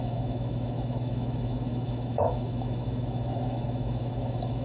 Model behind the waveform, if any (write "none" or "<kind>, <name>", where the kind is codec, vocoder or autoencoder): autoencoder, DAC-VAE